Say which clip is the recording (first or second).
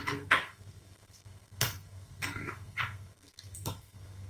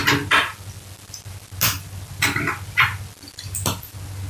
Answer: second